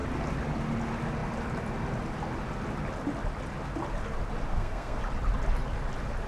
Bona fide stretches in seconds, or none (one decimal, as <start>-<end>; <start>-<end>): 0.0-4.5; 5.0-6.3

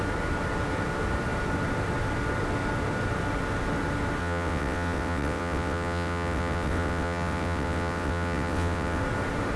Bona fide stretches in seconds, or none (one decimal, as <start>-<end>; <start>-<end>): 0.0-4.2; 9.0-9.6

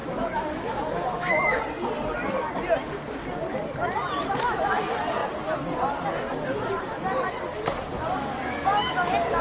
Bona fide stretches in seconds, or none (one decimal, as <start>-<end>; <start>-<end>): 1.6-9.4

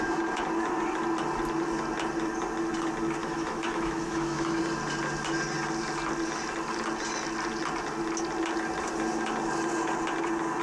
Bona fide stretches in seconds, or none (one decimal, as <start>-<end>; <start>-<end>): 0.0-3.2; 4.6-10.6

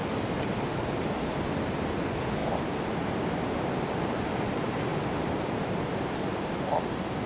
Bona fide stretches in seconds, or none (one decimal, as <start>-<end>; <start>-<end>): 0.0-7.3

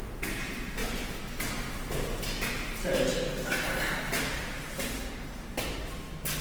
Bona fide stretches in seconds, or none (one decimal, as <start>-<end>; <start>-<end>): 0.0-6.4

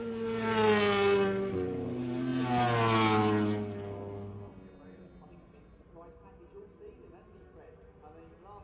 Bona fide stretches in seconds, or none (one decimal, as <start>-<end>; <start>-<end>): 0.0-8.6